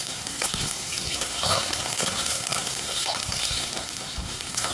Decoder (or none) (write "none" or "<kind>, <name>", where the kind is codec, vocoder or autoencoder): codec, SNAC